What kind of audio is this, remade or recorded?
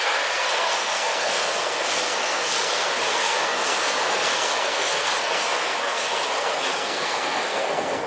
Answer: remade